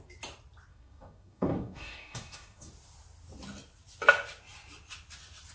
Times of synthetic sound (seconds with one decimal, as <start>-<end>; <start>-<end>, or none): 0.7-2.7

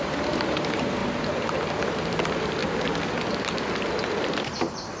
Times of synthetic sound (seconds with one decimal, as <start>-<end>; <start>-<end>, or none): 0.0-1.0; 1.7-2.6; 4.2-5.0

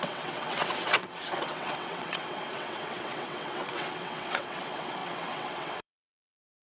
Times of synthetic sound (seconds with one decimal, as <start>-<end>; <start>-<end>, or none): 0.0-6.7

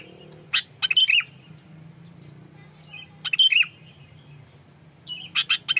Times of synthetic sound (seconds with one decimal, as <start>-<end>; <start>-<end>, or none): none

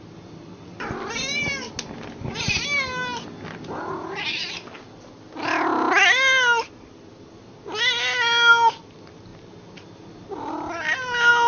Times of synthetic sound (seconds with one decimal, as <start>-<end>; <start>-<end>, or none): none